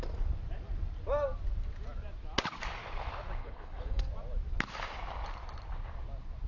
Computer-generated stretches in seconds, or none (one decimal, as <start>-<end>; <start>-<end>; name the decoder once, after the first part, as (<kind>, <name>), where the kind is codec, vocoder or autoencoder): 3.4-4.0 (codec, HILCodec)